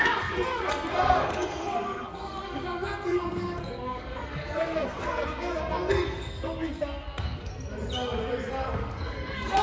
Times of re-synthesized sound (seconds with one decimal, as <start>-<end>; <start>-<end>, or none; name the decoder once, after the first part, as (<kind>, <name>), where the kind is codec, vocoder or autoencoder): 0.0-7.5 (codec, SNAC); 8.5-9.6